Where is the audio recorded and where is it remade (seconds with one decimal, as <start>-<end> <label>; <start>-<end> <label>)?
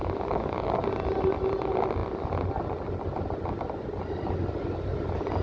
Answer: 0.0-0.7 remade; 0.7-5.4 recorded